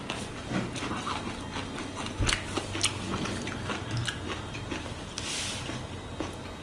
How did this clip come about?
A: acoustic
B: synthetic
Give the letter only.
A